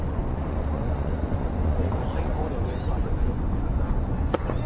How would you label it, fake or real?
fake